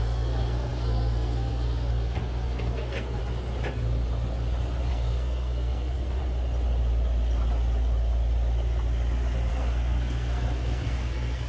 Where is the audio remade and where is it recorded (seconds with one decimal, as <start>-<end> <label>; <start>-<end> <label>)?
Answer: 0.0-3.2 remade; 3.2-4.9 recorded; 4.9-6.2 remade; 6.2-9.5 recorded; 9.5-11.5 remade